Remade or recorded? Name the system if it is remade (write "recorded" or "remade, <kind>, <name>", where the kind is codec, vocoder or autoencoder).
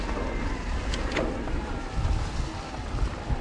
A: recorded